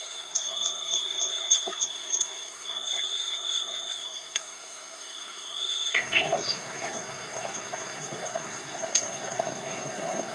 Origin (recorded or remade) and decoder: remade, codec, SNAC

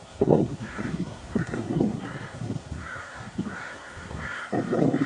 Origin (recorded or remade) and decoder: remade, codec, SNAC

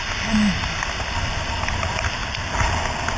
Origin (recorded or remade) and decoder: recorded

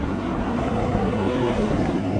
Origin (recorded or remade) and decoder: remade, codec, SNAC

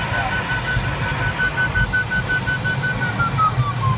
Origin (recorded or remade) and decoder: recorded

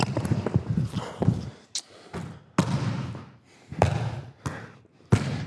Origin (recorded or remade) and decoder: recorded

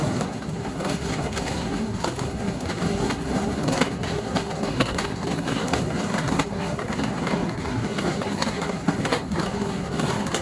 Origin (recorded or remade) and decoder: remade, codec, SNAC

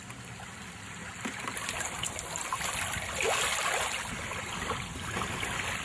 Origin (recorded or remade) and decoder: recorded